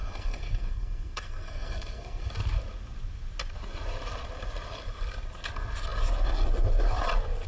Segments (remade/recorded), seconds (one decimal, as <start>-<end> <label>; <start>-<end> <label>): 0.0-2.3 remade; 2.3-7.5 recorded